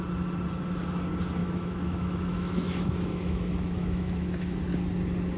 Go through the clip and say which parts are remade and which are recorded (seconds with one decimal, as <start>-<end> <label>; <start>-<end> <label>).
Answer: 0.0-1.4 recorded; 1.4-4.6 remade; 4.6-5.4 recorded